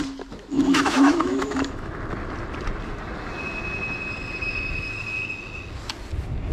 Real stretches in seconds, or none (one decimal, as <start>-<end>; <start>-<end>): 0.0-0.5; 2.0-6.5